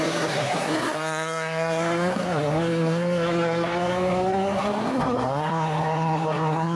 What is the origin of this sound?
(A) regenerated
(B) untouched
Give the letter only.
A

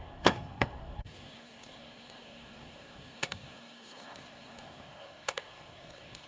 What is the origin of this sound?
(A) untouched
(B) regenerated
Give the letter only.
B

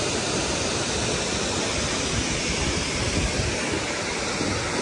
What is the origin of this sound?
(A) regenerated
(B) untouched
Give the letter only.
B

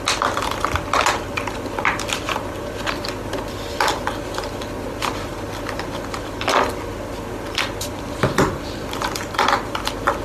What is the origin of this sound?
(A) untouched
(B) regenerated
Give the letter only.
A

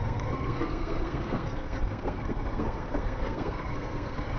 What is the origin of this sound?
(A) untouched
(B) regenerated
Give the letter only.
B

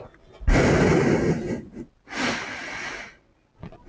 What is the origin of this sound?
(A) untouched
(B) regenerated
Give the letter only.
A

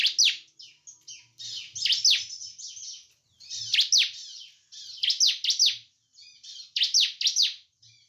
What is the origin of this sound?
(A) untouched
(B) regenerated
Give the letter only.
A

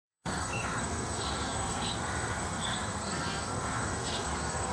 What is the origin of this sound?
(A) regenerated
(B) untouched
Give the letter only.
A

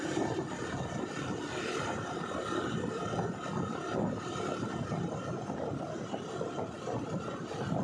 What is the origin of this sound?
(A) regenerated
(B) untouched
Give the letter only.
B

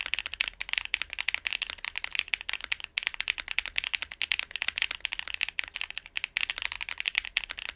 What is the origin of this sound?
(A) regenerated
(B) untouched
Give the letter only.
B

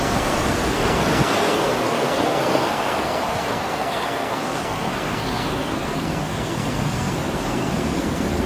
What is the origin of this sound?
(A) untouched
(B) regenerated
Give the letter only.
B